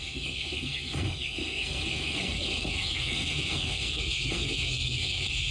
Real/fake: fake